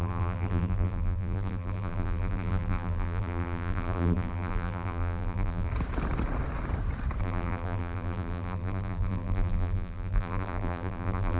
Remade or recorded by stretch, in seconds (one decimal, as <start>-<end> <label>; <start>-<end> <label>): 0.0-5.7 remade; 5.7-7.2 recorded; 7.2-11.4 remade